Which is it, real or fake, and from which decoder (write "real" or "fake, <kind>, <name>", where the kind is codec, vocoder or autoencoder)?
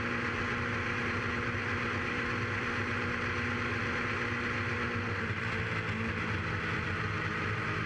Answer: real